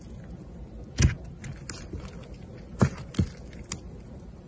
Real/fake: real